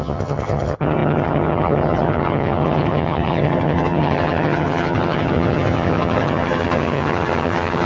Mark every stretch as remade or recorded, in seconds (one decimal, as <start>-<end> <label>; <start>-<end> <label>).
0.0-7.9 remade